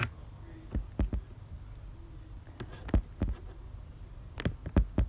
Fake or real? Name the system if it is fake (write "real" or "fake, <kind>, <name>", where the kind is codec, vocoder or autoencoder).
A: real